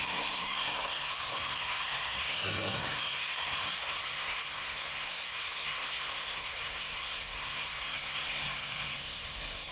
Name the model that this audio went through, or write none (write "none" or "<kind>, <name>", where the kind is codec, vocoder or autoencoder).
codec, SNAC